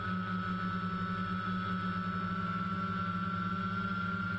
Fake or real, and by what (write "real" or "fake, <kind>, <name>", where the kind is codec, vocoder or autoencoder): real